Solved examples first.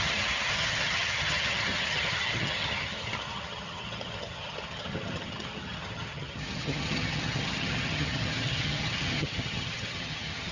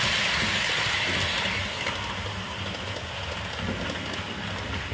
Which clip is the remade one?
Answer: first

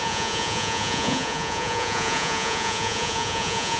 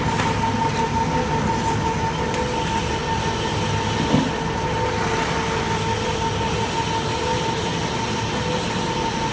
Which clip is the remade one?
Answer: first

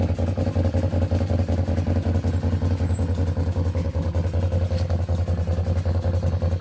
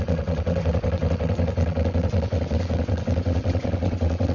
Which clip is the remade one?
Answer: second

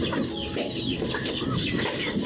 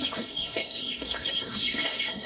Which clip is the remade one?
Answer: second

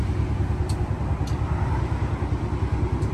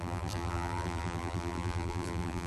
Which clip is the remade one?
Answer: second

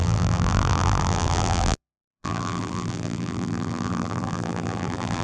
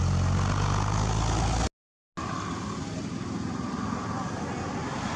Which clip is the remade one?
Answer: first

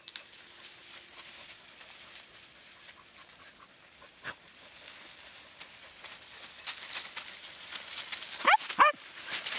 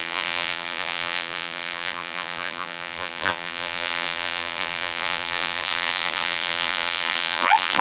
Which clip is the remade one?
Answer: second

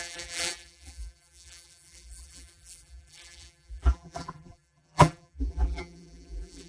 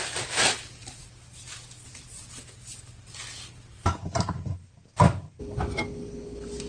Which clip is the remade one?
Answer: first